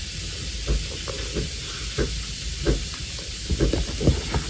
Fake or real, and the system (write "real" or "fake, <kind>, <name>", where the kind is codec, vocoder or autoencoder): real